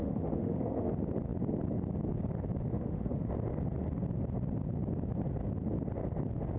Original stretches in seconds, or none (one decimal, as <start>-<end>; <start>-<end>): 0.9-2.7; 3.3-6.6

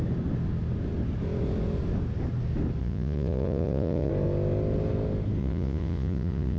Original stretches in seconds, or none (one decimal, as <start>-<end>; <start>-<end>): 0.0-2.8; 4.1-5.4